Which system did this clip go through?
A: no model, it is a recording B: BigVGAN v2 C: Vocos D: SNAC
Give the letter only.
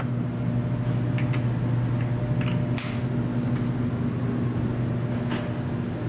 A